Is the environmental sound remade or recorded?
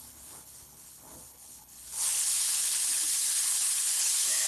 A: remade